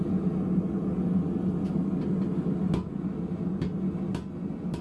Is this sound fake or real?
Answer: real